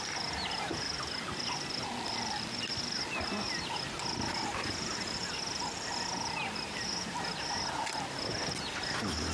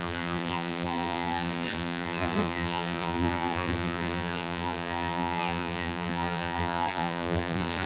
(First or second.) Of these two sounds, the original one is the first